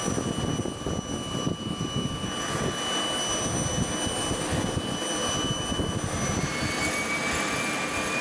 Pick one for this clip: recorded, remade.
recorded